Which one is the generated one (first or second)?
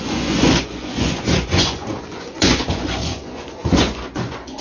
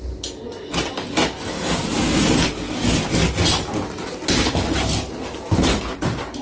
first